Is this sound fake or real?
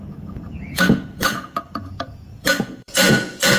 fake